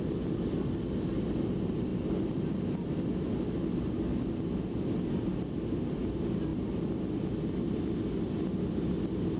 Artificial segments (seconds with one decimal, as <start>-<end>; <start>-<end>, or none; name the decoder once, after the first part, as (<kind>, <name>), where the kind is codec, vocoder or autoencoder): none